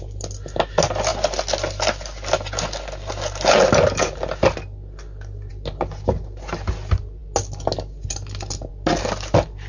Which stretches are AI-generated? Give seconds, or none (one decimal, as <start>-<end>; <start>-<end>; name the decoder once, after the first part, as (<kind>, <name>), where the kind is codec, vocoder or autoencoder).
none